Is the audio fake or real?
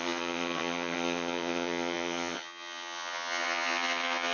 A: fake